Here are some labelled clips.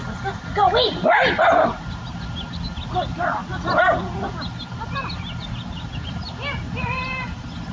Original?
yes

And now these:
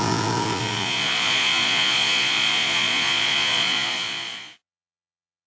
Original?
no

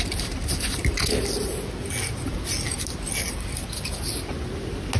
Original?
yes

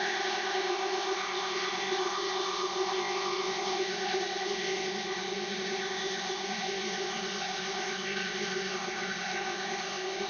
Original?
no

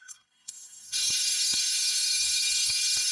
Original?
no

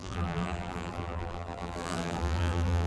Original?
no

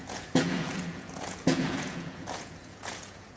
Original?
no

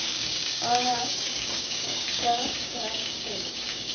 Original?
no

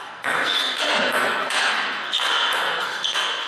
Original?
no